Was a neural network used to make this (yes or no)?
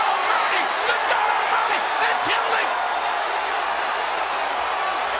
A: no